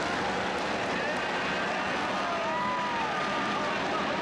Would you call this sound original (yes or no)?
yes